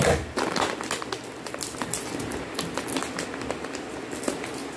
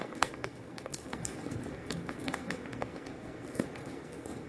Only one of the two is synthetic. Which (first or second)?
second